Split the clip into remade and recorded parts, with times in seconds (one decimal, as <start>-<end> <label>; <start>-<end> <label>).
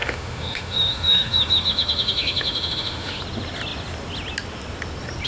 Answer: 0.0-3.2 remade; 3.2-5.3 recorded